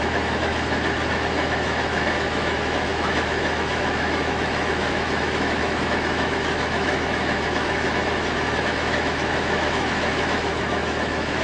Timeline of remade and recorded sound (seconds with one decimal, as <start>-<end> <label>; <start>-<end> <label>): 0.0-0.5 remade; 0.5-1.1 recorded; 1.1-11.4 remade